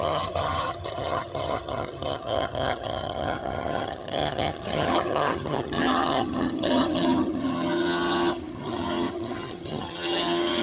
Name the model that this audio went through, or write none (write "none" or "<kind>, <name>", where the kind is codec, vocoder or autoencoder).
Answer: vocoder, HiFi-GAN